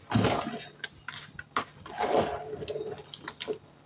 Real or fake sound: real